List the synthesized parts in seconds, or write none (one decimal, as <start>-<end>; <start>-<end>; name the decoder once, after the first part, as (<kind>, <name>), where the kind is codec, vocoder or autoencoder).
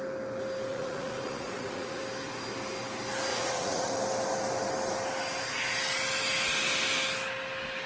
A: 0.7-2.0 (vocoder, Vocos); 3.3-3.9